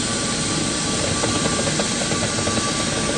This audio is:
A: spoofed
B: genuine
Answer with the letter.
B